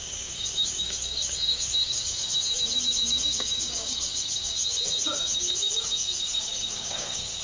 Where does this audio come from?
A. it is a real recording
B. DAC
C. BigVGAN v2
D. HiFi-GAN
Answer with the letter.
B